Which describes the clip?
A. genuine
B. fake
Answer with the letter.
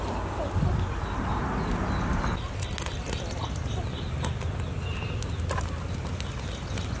A